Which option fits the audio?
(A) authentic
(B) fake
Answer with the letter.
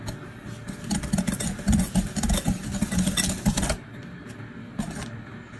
A